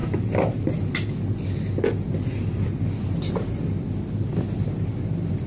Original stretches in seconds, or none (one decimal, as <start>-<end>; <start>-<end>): 0.0-5.5